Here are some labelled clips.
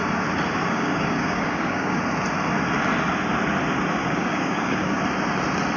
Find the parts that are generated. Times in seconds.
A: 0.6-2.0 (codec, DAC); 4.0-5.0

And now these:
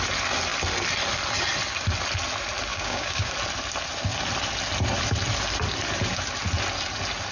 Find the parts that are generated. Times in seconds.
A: 2.7-3.3 (codec, DAC)

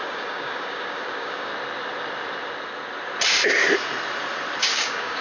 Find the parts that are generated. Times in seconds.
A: 0.0-1.5 (codec, DAC); 4.6-5.2

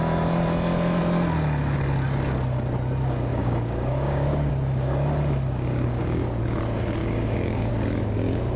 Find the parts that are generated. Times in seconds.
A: 3.3-4.5 (codec, DAC); 5.7-6.4; 7.0-7.7

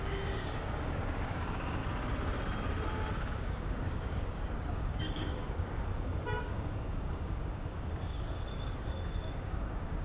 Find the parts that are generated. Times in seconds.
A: 0.0-1.8 (codec, DAC); 3.1-10.0